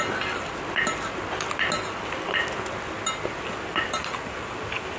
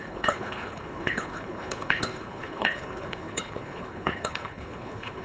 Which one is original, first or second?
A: first